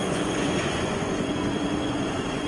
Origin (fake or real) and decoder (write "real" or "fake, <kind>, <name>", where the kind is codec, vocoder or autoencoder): fake, vocoder, Vocos